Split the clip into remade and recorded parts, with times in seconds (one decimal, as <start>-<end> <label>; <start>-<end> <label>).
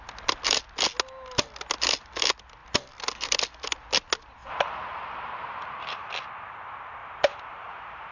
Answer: 0.0-4.4 recorded; 4.4-6.1 remade; 6.1-7.0 recorded; 7.0-8.1 remade